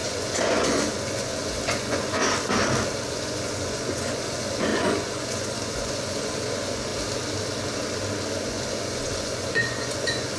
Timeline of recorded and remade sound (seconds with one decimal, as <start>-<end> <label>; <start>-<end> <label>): 0.0-2.2 remade; 2.2-3.1 recorded; 3.1-6.9 remade; 6.9-8.4 recorded; 8.4-10.4 remade